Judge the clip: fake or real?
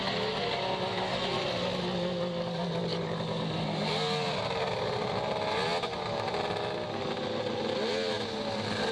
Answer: real